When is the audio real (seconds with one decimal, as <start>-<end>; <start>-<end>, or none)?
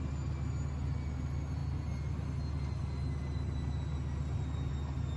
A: 0.0-5.2